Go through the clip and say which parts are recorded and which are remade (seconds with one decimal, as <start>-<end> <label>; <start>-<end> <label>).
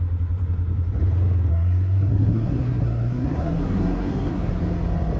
0.0-1.5 recorded; 1.5-4.6 remade; 4.6-5.2 recorded